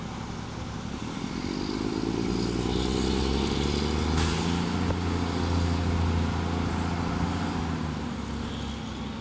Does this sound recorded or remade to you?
recorded